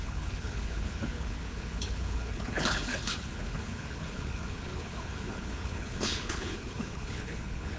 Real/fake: fake